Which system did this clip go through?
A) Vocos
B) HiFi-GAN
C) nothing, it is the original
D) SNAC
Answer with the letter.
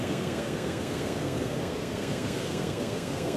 D